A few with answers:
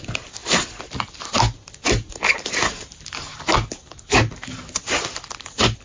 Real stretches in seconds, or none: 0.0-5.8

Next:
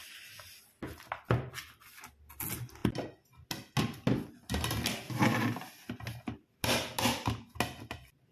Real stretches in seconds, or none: 0.0-8.3

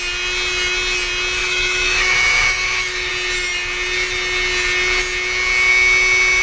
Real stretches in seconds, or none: 0.0-1.4; 3.1-6.4

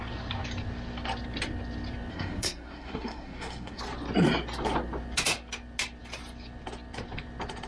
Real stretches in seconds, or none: 0.0-2.1; 3.8-7.7

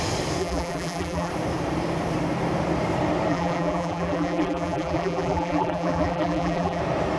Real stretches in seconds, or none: 0.0-0.4; 1.3-3.3; 6.8-7.2